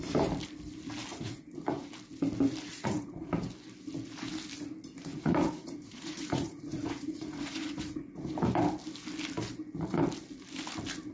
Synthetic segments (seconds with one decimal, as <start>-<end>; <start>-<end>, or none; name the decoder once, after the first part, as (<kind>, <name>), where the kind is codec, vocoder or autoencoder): 1.1-1.9 (vocoder, Vocos); 2.7-3.3; 5.1-8.4